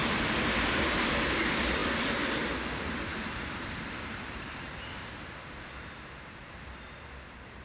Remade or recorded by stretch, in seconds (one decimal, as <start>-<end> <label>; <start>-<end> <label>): 0.0-1.0 remade; 1.0-3.1 recorded; 3.1-6.9 remade; 6.9-7.6 recorded

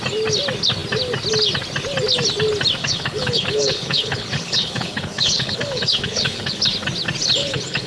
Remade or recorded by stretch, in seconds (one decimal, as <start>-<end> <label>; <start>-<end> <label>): 0.0-2.8 recorded; 2.8-6.6 remade; 6.6-7.4 recorded; 7.4-7.9 remade